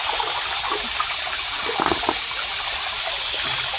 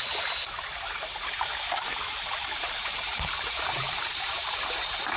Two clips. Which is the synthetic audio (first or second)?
second